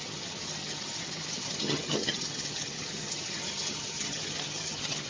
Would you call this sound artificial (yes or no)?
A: yes